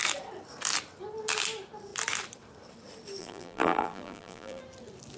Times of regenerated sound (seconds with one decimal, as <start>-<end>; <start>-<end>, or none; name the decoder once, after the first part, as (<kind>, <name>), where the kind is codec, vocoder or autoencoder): 3.2-4.6 (vocoder, BigVGAN v2)

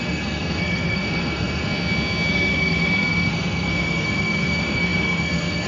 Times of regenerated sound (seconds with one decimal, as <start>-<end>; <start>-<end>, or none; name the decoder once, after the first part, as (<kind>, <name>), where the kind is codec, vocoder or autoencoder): 0.0-1.6 (codec, SNAC); 2.3-5.7

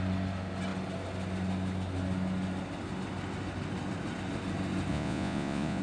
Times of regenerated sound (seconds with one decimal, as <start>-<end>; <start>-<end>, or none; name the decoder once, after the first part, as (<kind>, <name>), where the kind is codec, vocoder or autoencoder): 4.9-5.8 (vocoder, Vocos)

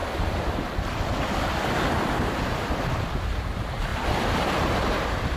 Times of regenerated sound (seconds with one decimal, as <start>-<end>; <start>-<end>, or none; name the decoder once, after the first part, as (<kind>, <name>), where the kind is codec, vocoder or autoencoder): 3.2-3.9 (vocoder, BigVGAN v2); 4.5-5.4

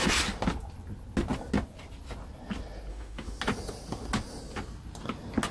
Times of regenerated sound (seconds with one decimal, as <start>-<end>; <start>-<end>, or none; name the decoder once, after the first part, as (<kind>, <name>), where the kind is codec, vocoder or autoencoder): 2.9-3.4 (autoencoder, DAC-VAE)

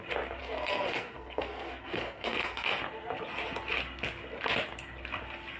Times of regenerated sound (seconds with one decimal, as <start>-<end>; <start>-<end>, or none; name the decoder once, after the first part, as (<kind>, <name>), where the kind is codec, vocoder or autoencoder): 0.4-2.8 (codec, SNAC)

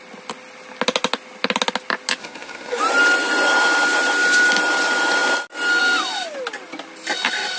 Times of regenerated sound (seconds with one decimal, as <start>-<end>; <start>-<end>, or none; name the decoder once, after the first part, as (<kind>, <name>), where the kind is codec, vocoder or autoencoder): 2.2-2.8 (codec, SNAC)